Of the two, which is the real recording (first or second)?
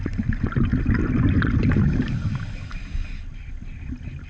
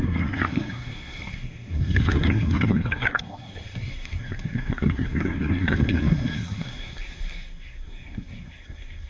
first